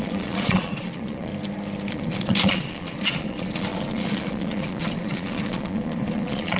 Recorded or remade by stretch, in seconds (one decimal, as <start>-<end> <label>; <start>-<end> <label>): 0.0-1.3 remade; 1.3-1.9 recorded; 1.9-6.6 remade